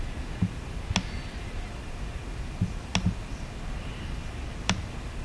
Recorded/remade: recorded